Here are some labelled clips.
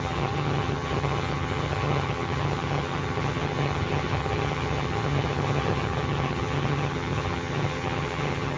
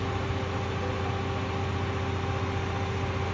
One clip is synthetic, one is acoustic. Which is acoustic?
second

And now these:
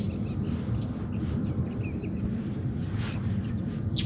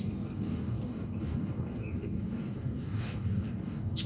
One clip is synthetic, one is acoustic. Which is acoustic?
first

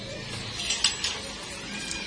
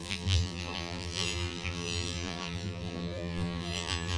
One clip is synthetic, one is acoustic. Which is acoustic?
first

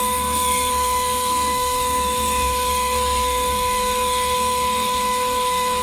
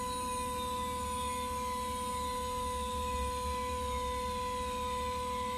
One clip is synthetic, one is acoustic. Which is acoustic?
second